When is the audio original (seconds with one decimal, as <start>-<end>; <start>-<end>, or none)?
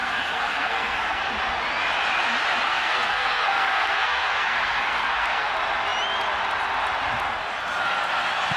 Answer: 1.3-2.7; 5.5-8.6